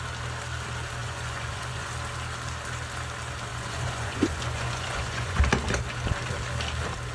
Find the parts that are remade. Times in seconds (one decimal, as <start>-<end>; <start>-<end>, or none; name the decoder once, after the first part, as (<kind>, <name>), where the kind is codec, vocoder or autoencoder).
1.0-1.9 (vocoder, Vocos); 3.5-5.4